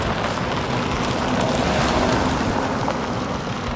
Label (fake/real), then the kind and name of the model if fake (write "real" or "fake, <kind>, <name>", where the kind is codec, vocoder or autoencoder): real